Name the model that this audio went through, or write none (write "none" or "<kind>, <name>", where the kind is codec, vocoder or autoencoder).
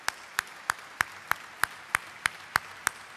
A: none